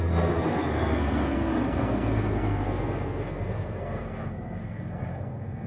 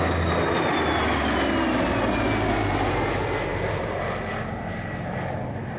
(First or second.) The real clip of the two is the second